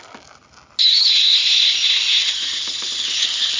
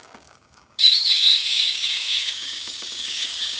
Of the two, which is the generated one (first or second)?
second